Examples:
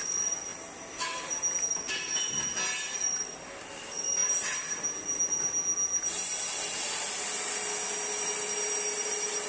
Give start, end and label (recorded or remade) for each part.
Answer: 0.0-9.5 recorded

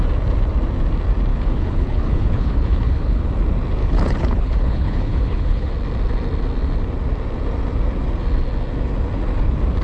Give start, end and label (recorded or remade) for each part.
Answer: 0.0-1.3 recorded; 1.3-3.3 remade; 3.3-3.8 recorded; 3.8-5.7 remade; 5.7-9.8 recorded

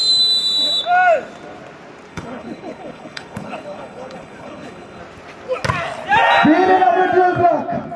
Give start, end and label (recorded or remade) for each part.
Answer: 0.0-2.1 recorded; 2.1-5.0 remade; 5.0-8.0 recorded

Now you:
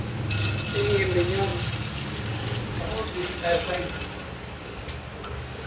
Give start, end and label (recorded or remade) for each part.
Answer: 0.0-5.7 recorded